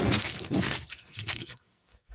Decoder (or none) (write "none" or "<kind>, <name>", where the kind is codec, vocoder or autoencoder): codec, SNAC